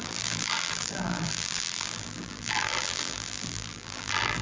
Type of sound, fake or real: fake